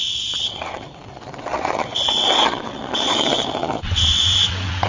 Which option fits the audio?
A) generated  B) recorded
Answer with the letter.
A